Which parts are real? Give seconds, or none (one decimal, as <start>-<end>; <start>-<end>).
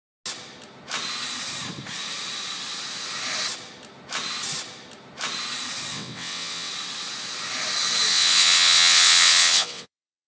0.0-5.9; 6.7-8.1